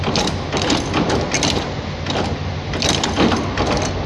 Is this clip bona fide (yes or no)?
yes